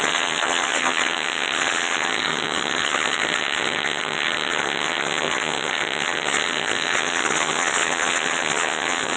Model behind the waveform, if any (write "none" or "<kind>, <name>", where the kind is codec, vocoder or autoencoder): vocoder, HiFi-GAN